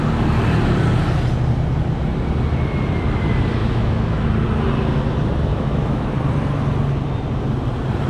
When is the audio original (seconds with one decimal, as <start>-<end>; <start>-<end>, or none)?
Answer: 0.0-3.6; 4.3-5.5; 6.1-8.1